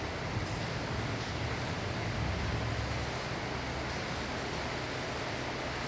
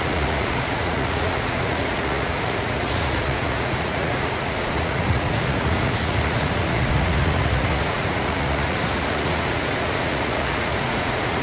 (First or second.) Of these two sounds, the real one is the first